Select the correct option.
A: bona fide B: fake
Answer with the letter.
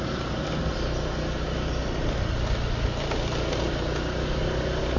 A